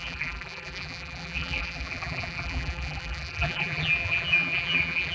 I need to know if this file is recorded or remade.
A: remade